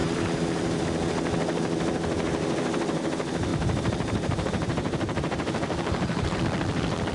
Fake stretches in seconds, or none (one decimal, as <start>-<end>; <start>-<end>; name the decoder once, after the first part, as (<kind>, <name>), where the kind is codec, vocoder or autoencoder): 0.0-0.8 (vocoder, BigVGAN v2); 3.5-6.4